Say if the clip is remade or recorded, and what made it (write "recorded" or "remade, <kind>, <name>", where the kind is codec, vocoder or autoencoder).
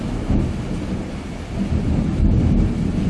recorded